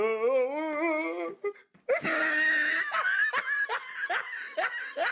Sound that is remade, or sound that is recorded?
recorded